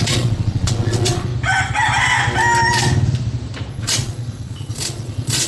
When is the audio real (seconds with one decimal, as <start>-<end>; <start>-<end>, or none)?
1.3-3.7